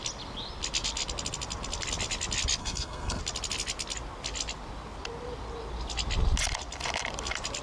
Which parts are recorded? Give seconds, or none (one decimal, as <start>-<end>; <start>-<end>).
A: 0.0-2.6; 3.2-7.6